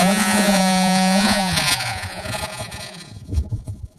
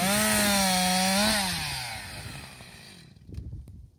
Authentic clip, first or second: second